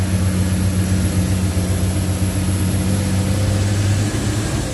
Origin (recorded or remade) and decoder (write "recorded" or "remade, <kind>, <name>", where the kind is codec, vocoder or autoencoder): recorded